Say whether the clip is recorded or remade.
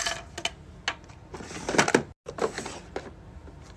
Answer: recorded